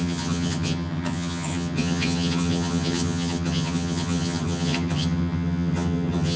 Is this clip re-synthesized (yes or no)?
yes